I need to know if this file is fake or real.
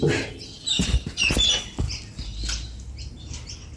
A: real